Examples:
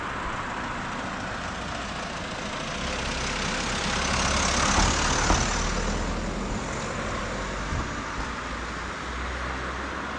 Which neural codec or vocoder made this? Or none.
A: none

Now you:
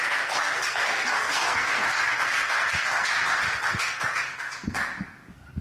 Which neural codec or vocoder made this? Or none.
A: codec, SNAC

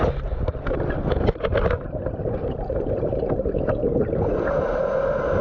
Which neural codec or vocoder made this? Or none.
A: none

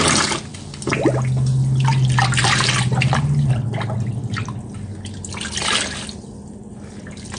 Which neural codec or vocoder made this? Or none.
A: none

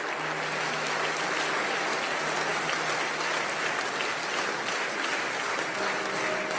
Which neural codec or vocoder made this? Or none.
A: none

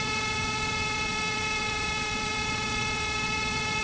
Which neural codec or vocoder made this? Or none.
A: vocoder, Vocos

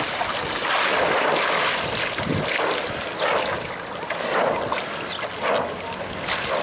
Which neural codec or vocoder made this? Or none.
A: none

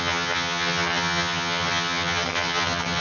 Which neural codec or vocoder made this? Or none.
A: vocoder, HiFi-GAN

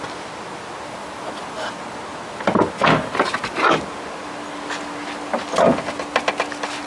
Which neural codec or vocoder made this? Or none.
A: none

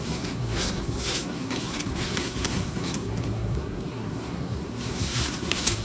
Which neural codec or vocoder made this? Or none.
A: codec, SNAC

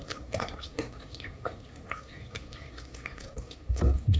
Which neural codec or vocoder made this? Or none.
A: codec, SNAC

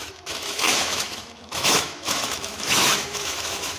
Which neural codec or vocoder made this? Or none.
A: autoencoder, DAC-VAE